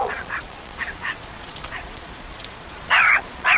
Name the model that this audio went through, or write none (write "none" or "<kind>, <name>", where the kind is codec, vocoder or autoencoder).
vocoder, Vocos